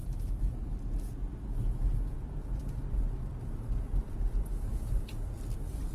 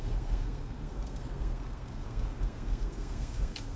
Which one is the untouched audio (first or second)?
first